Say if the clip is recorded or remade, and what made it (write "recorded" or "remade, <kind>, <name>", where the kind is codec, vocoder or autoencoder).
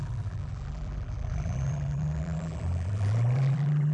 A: remade, vocoder, BigVGAN v2